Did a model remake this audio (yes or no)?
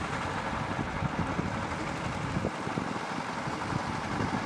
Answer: no